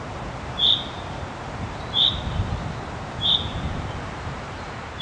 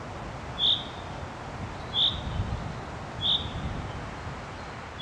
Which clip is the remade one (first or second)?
first